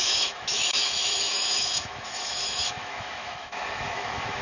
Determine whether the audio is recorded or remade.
remade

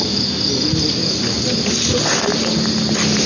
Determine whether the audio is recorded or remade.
recorded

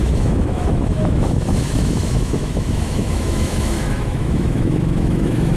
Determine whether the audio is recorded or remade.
remade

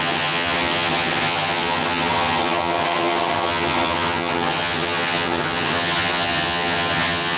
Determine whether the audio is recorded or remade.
remade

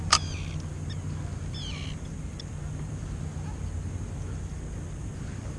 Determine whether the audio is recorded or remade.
recorded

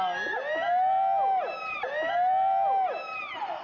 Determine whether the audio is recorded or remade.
recorded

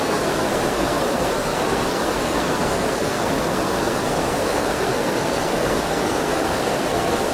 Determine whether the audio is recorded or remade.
remade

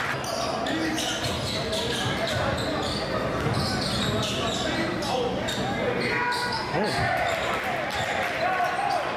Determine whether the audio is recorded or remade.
recorded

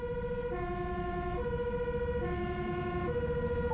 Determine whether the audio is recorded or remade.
remade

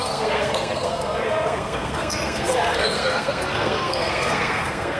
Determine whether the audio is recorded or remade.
remade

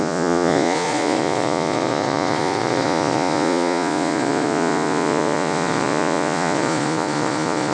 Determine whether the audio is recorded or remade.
remade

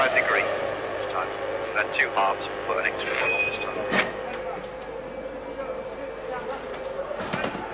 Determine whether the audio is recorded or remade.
recorded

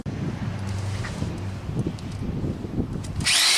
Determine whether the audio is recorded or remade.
recorded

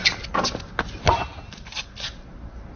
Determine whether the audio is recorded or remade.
recorded